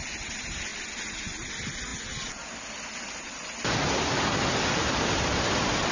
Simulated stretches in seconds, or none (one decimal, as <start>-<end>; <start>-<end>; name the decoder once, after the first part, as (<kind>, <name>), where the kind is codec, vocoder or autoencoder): none